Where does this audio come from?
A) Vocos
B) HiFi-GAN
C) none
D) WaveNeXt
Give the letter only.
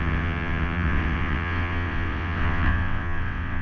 D